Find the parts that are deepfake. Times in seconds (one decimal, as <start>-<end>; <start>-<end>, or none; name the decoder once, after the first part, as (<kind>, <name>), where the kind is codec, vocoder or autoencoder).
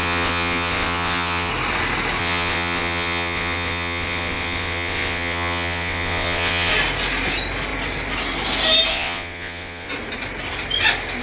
0.0-1.5 (vocoder, WaveNeXt); 2.2-6.7; 8.9-9.9